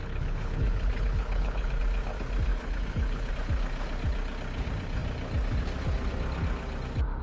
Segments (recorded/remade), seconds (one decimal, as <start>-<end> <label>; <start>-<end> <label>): 0.0-1.8 remade; 1.8-2.5 recorded; 2.5-3.3 remade; 3.3-7.2 recorded